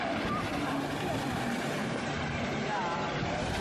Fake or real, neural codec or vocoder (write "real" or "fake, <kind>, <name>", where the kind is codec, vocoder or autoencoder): fake, vocoder, BigVGAN v2